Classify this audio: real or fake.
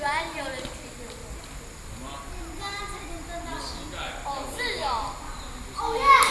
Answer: real